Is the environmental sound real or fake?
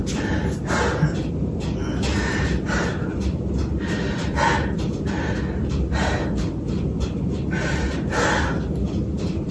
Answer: real